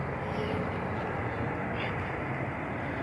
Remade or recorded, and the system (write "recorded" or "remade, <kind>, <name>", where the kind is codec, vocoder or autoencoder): remade, vocoder, BigVGAN v2